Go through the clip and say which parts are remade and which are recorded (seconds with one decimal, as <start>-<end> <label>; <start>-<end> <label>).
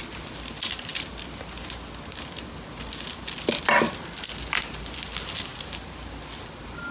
0.0-6.9 recorded